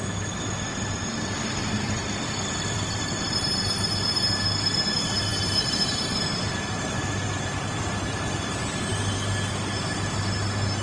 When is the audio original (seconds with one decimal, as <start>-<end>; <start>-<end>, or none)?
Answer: 0.0-1.6; 3.1-5.3; 7.0-10.8